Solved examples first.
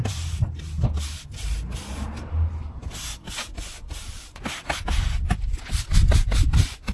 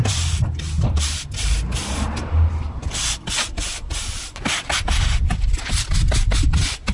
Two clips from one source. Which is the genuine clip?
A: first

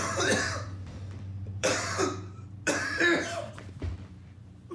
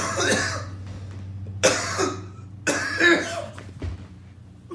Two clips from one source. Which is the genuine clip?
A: second